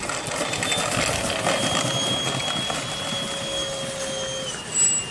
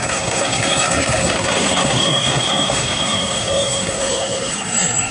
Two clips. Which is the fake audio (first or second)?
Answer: second